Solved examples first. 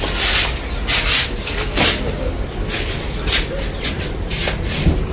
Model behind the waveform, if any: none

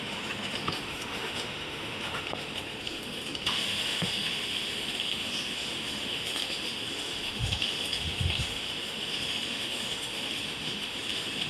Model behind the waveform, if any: autoencoder, DAC-VAE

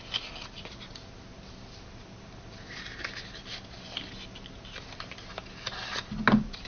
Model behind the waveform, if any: none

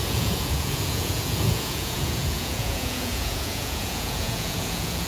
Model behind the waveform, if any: vocoder, Vocos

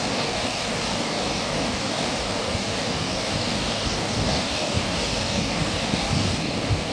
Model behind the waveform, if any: codec, DAC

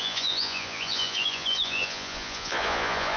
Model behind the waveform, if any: vocoder, Vocos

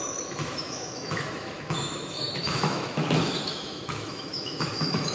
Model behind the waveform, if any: autoencoder, DAC-VAE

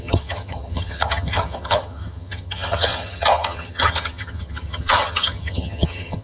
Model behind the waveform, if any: vocoder, HiFi-GAN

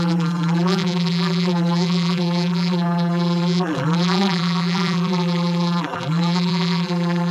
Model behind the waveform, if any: vocoder, BigVGAN v2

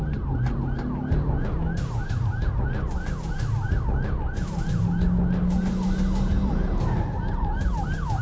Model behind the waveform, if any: none